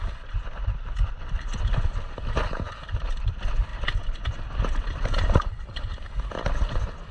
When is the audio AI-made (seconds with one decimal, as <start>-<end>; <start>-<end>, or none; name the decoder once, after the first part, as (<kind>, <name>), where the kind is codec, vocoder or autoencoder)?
none